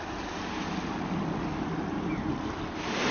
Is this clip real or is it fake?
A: real